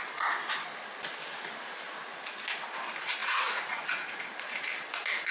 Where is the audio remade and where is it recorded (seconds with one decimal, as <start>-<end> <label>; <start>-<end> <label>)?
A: 0.0-3.2 recorded; 3.2-4.5 remade; 4.5-5.3 recorded